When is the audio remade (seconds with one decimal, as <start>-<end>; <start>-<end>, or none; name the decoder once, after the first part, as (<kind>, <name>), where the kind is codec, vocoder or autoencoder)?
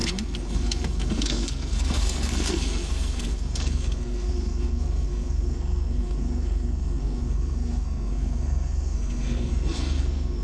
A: 0.0-10.4 (codec, SNAC)